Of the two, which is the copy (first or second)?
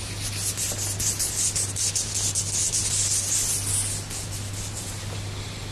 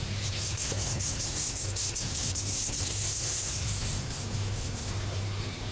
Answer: second